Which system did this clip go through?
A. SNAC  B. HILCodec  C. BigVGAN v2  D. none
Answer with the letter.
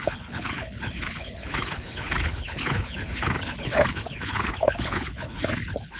B